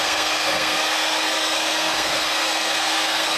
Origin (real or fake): fake